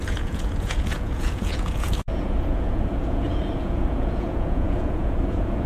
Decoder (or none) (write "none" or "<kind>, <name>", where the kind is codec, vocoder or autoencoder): vocoder, Vocos